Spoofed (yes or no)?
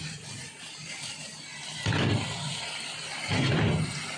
no